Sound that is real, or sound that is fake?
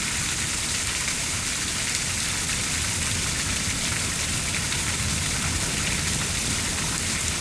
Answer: real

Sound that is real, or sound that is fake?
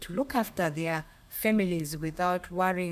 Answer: fake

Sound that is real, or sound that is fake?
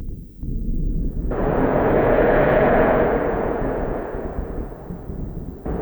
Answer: fake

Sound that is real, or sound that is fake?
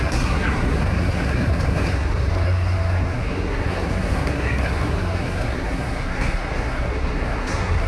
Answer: fake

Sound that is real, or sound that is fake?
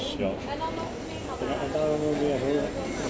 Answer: real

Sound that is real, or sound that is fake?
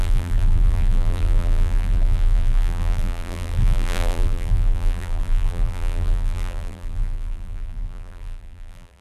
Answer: fake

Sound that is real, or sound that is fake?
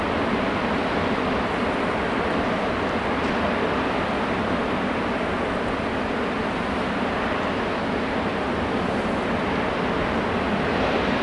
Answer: real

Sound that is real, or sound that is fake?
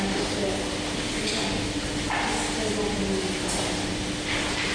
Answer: real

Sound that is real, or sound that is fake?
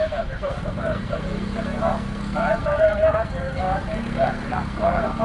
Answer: fake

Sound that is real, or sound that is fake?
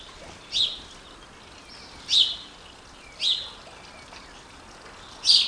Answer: real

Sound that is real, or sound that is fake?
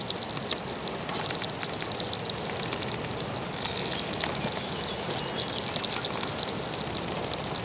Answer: real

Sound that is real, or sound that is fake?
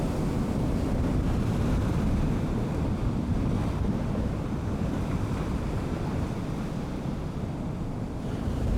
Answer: fake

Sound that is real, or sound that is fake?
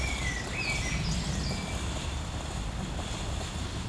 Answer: real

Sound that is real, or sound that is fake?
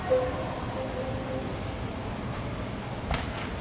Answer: fake